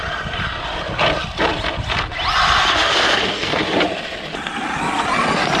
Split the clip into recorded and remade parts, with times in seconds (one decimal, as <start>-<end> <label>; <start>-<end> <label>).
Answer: 0.0-2.7 recorded; 2.7-3.6 remade; 3.6-5.6 recorded